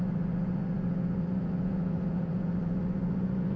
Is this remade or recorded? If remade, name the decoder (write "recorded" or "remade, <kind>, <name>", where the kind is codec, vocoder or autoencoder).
remade, vocoder, Vocos